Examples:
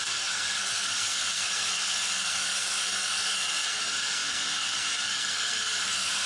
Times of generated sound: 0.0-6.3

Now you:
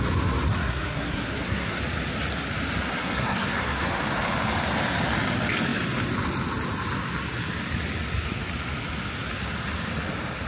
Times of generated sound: 0.5-1.8; 2.9-4.0